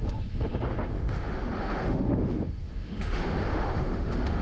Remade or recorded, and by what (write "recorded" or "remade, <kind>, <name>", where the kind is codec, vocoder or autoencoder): remade, autoencoder, DAC-VAE